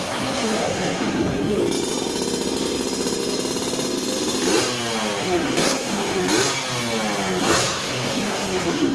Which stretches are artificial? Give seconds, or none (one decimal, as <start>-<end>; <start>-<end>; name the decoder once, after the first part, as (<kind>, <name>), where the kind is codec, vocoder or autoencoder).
0.0-1.6 (codec, SNAC); 5.2-6.2; 7.4-8.9